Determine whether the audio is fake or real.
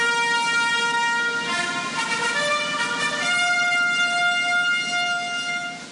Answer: real